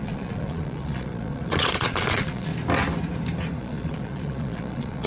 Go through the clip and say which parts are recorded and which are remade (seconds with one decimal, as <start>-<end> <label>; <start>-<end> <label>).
0.0-2.5 remade; 2.5-3.6 recorded; 3.6-5.1 remade